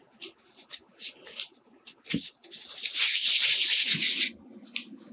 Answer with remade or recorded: recorded